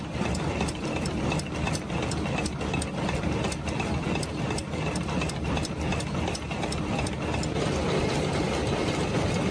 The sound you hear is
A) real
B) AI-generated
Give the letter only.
A